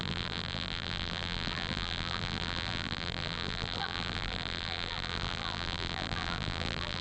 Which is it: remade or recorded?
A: remade